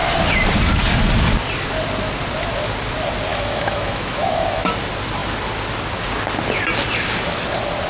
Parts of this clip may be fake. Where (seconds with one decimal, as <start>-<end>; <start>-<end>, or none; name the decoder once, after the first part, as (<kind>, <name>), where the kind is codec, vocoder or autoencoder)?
3.3-4.7 (autoencoder, DAC-VAE)